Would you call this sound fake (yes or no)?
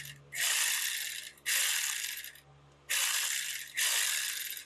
yes